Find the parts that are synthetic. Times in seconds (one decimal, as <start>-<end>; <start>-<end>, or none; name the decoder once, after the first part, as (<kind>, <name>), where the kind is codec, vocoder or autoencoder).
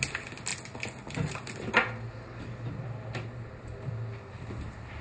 none